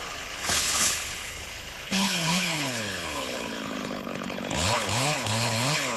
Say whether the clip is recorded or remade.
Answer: remade